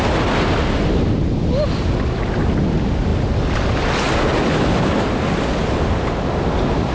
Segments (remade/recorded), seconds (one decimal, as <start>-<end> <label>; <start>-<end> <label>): 0.0-6.9 recorded